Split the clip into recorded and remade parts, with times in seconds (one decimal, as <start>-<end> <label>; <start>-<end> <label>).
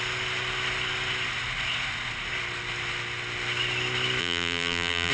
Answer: 0.0-4.2 recorded; 4.2-5.1 remade